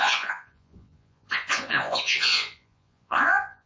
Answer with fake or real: fake